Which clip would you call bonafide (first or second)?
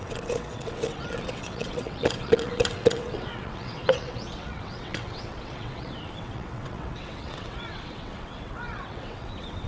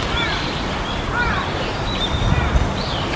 second